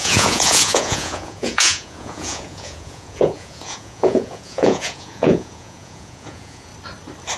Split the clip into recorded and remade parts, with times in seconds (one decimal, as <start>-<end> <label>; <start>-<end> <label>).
0.0-6.7 remade; 6.7-7.4 recorded